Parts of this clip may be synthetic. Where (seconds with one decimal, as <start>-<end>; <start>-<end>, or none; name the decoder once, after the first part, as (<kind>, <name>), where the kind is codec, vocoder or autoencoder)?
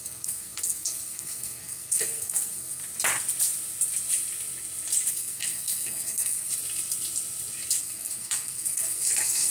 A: 0.0-2.8 (codec, SNAC); 5.1-6.5; 7.8-9.5